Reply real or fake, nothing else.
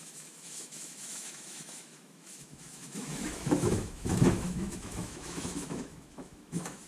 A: fake